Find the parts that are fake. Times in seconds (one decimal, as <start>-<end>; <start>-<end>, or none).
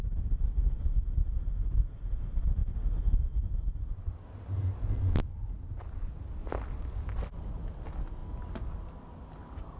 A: none